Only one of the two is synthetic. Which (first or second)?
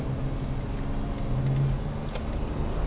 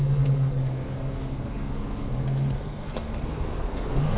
second